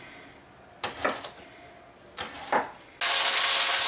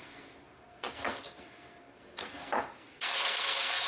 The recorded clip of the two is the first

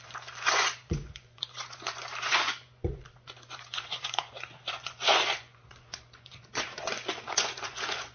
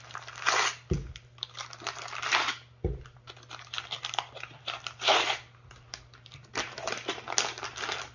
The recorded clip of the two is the second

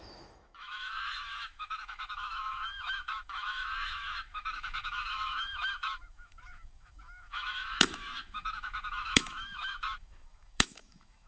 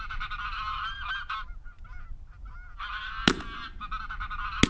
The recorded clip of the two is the second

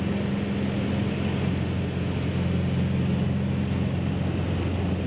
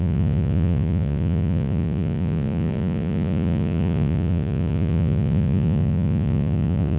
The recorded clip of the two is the first